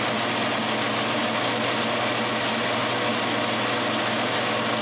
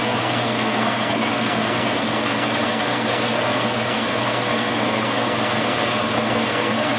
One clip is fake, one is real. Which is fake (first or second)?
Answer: second